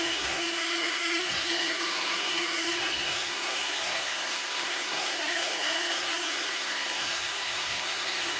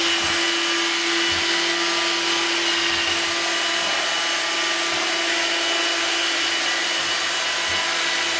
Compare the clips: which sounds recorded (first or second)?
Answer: second